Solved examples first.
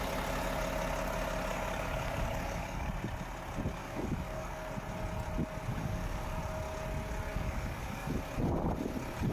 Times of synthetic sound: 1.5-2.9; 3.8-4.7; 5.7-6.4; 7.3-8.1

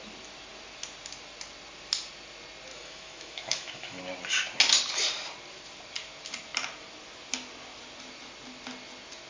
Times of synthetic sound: 2.7-4.0